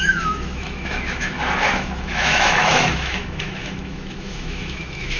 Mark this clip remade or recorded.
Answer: remade